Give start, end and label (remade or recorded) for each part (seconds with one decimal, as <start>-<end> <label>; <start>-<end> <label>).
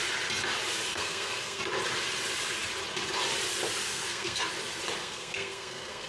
0.0-0.9 recorded; 0.9-1.6 remade; 1.6-3.8 recorded; 3.8-4.4 remade; 4.4-5.0 recorded; 5.0-6.1 remade